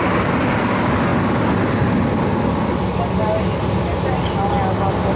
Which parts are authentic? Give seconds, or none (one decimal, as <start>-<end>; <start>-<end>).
0.0-5.2